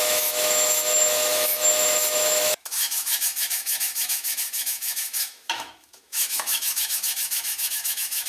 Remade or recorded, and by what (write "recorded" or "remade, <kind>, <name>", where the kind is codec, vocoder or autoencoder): remade, autoencoder, DAC-VAE